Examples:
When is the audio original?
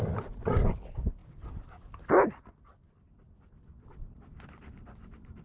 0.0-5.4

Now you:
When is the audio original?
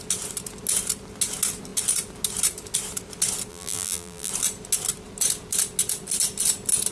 0.0-3.5; 4.3-6.9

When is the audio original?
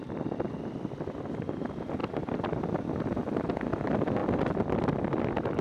0.0-5.6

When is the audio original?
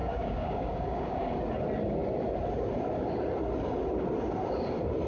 1.3-5.1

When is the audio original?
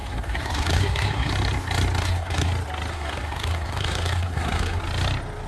1.3-2.0; 2.5-2.9; 4.8-5.5